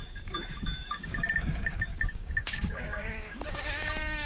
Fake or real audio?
fake